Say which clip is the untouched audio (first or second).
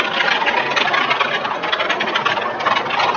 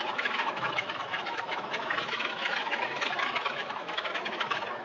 first